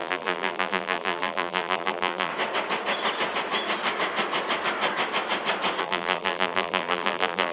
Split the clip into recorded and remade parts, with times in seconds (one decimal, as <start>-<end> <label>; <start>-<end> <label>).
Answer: 0.0-2.3 remade; 2.3-5.8 recorded; 5.8-7.5 remade